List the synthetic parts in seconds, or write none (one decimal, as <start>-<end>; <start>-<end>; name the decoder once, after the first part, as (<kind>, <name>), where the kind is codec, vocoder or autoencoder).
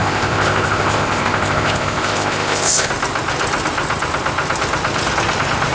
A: 0.0-2.9 (codec, ZipCodec)